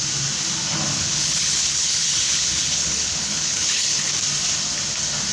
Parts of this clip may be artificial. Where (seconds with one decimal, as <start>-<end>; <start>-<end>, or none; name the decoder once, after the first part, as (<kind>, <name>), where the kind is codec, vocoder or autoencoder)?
0.9-4.1 (codec, HILCodec)